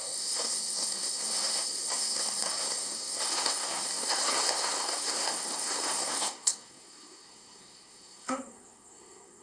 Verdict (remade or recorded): remade